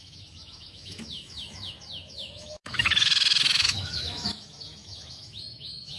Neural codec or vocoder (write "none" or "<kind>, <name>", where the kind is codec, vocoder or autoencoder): autoencoder, DAC-VAE